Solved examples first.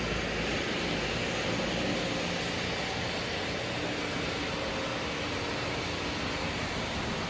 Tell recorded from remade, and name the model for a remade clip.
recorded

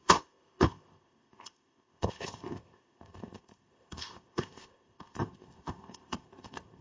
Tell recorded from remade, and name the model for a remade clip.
remade, codec, ZipCodec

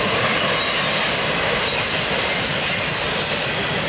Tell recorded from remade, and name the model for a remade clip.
recorded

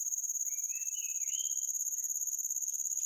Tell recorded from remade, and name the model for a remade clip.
recorded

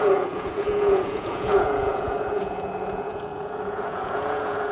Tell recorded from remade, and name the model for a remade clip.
remade, vocoder, Vocos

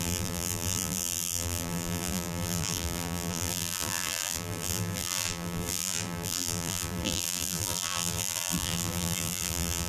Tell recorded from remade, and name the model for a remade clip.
remade, vocoder, BigVGAN v2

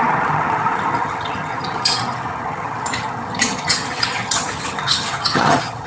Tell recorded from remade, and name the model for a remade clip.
remade, vocoder, HiFi-GAN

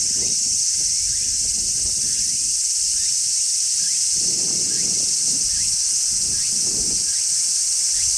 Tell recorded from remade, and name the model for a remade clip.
recorded